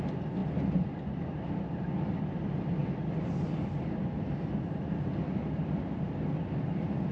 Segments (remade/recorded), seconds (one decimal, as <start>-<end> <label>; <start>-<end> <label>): 0.0-7.1 recorded